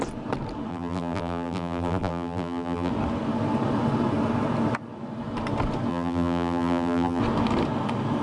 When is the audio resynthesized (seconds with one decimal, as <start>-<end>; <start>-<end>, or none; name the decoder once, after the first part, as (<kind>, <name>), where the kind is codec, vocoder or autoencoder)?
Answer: 0.7-2.9 (vocoder, BigVGAN v2); 5.9-7.2